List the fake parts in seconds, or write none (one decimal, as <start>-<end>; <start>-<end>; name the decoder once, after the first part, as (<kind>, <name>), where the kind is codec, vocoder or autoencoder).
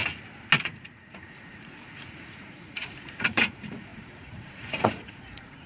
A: 0.6-5.7 (vocoder, Vocos)